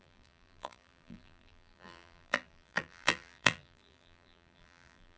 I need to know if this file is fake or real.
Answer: fake